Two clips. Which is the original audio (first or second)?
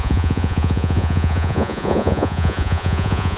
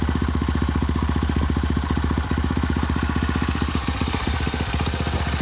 second